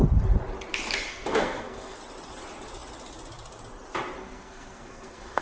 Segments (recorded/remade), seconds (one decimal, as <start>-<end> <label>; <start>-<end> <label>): 0.0-1.1 recorded; 1.1-2.0 remade; 2.0-4.2 recorded; 4.2-5.4 remade